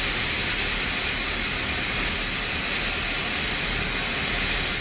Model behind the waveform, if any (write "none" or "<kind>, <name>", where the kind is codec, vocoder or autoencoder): none